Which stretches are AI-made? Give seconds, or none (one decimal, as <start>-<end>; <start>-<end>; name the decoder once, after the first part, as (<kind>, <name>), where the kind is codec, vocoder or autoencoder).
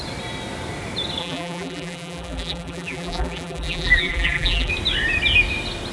1.2-4.7 (vocoder, BigVGAN v2)